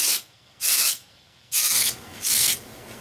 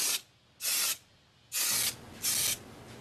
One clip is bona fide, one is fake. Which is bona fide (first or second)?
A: second